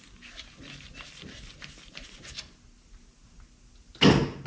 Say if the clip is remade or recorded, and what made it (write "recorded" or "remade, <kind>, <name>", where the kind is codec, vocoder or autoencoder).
recorded